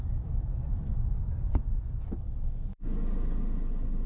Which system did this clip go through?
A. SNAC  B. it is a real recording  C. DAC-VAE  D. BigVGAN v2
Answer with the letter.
B